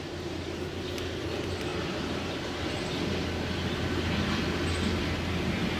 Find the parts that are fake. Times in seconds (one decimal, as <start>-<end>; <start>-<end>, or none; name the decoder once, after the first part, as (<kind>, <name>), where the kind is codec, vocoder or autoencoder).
none